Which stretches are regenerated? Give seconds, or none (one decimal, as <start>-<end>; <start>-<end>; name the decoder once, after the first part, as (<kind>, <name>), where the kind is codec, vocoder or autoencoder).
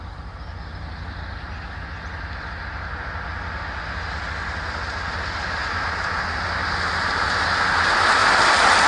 none